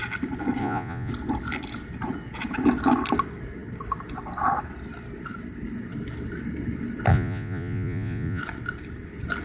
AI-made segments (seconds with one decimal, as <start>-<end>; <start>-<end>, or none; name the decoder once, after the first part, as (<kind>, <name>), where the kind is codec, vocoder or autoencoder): 0.6-1.1 (vocoder, Vocos); 7.1-8.4